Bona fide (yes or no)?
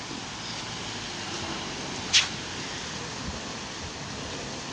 yes